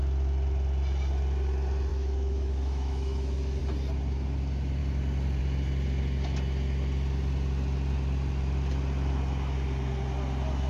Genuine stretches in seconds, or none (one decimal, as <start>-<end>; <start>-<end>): 0.0-1.9; 3.6-10.7